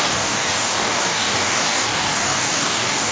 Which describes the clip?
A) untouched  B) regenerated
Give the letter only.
B